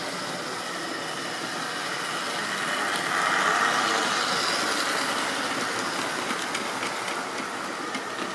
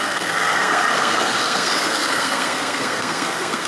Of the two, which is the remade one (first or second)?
second